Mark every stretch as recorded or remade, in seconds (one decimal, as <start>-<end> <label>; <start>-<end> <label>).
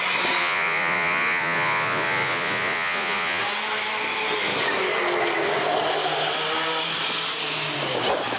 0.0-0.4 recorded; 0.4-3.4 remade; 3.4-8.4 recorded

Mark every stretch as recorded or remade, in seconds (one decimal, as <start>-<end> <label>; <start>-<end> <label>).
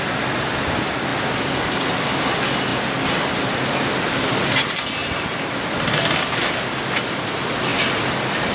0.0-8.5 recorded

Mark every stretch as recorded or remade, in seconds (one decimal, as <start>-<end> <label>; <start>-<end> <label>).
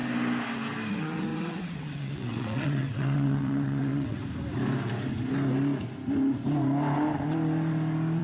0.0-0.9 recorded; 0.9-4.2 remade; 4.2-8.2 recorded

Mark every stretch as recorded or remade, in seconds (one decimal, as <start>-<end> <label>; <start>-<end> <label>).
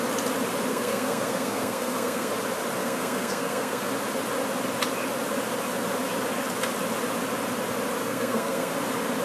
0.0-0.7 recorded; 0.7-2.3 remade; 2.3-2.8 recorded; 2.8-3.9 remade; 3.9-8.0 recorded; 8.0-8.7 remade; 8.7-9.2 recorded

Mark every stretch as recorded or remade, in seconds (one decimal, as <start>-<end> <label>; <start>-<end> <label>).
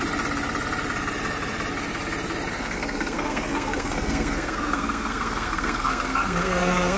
0.0-2.6 recorded; 2.6-7.0 remade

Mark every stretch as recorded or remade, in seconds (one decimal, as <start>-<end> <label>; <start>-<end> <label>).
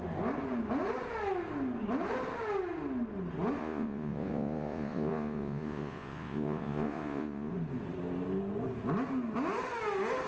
0.0-3.6 recorded; 3.6-7.5 remade; 7.5-10.3 recorded